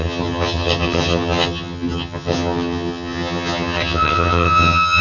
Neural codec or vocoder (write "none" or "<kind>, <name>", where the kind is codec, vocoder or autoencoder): vocoder, HiFi-GAN